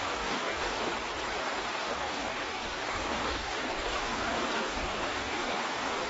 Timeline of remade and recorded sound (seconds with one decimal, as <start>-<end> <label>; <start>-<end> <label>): 0.0-0.9 remade; 0.9-1.4 recorded; 1.4-6.1 remade